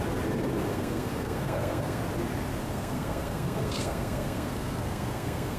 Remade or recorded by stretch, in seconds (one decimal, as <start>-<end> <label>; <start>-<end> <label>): 0.0-0.7 recorded; 0.7-2.0 remade; 2.0-2.6 recorded; 2.6-5.6 remade